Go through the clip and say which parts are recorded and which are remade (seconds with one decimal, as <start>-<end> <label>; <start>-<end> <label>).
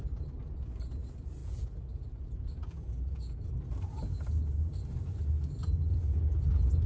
0.0-1.4 recorded; 1.4-3.6 remade; 3.6-5.9 recorded; 5.9-6.9 remade